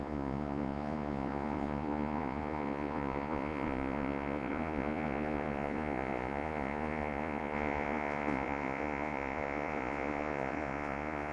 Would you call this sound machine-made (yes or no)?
yes